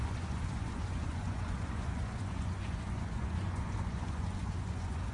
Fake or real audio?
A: fake